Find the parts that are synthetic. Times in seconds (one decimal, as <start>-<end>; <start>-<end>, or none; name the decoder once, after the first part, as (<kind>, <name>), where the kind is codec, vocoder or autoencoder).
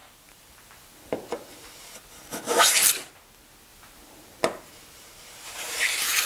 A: 0.0-3.1 (vocoder, BigVGAN v2); 3.7-6.3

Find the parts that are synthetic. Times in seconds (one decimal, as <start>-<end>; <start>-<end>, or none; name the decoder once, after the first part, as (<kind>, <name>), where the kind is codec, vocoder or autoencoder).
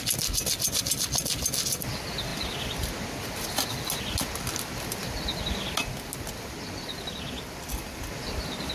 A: none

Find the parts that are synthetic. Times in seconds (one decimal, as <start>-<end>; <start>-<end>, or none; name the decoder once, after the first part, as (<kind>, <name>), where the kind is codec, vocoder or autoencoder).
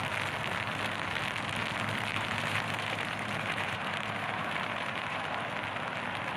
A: 2.1-5.3 (vocoder, BigVGAN v2)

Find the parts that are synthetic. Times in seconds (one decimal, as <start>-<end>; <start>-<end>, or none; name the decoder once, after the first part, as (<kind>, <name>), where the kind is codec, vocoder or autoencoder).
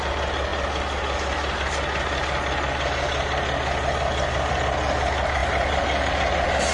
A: 5.4-6.1 (vocoder, BigVGAN v2)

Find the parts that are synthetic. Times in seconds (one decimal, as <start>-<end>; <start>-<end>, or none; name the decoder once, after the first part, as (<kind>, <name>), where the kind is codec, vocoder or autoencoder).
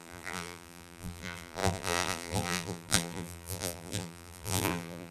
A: 0.0-5.1 (vocoder, BigVGAN v2)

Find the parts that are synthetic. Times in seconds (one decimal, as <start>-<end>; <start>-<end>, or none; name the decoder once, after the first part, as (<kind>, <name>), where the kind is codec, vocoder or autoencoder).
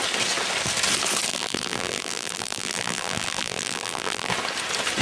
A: 1.3-4.3 (vocoder, BigVGAN v2)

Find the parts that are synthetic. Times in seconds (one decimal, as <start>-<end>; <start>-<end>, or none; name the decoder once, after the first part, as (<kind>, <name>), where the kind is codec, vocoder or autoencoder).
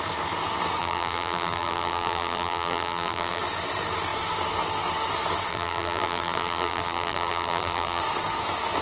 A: 0.8-3.4 (vocoder, BigVGAN v2); 5.5-8.0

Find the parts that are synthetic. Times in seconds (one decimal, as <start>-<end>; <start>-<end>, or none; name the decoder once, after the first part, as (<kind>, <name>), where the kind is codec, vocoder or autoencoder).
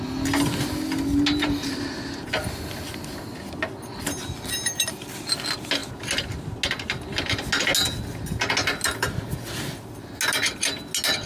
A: none